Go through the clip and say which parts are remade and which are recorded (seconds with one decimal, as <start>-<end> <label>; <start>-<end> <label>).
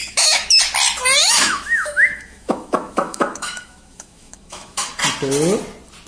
0.0-0.6 remade; 0.6-1.2 recorded; 1.2-4.9 remade; 4.9-6.1 recorded